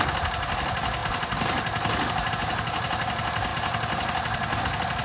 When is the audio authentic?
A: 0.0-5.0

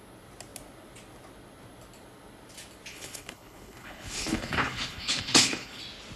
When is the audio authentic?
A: 0.0-2.9; 5.8-6.2

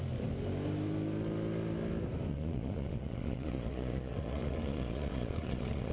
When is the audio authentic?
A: 0.0-2.3

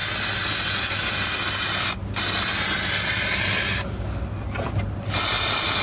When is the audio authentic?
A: 0.0-5.8

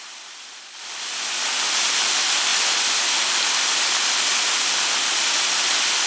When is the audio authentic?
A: 0.0-6.1